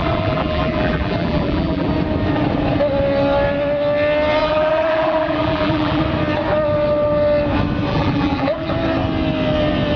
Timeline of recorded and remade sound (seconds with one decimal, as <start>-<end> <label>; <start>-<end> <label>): 0.0-1.9 remade; 1.9-4.4 recorded; 4.4-6.0 remade; 6.0-7.9 recorded; 7.9-8.7 remade; 8.7-10.0 recorded